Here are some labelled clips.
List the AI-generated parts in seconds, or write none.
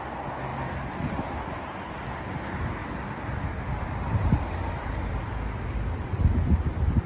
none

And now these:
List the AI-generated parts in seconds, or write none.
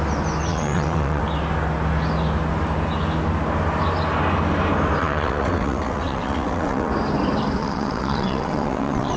0.5-1.2 (vocoder, WaveNeXt); 5.0-6.9; 7.6-9.2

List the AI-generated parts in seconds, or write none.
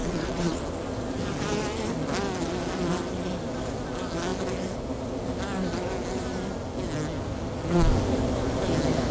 0.0-0.6 (vocoder, WaveNeXt)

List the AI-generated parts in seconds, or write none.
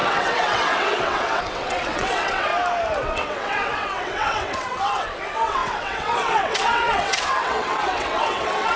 0.0-2.5 (vocoder, WaveNeXt); 3.0-8.8